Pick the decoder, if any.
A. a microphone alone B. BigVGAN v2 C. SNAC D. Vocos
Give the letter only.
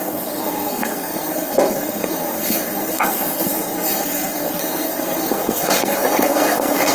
C